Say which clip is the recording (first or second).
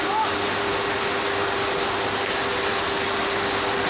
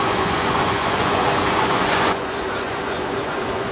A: first